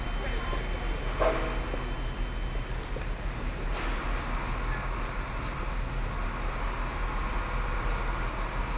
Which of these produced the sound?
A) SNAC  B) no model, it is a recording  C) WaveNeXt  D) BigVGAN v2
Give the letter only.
B